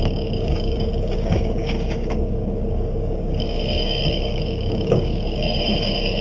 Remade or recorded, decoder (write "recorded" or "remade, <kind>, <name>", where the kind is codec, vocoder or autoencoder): remade, codec, DAC